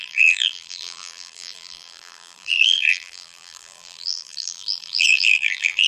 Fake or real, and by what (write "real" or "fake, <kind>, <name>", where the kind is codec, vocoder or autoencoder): fake, vocoder, BigVGAN v2